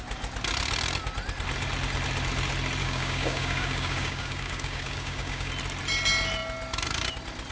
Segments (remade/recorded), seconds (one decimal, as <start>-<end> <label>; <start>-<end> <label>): 0.0-2.8 recorded; 2.8-5.5 remade; 5.5-7.5 recorded

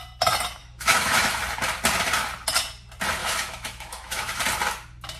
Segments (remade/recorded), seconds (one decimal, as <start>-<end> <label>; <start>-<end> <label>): 0.0-0.6 recorded; 0.6-1.4 remade; 1.4-3.2 recorded; 3.2-4.4 remade; 4.4-5.2 recorded